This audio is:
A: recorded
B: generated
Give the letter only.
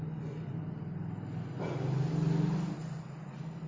A